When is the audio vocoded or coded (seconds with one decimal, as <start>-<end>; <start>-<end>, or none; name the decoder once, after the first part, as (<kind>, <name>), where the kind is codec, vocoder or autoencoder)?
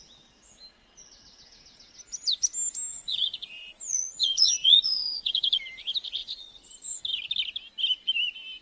2.9-5.6 (vocoder, Vocos); 6.2-7.0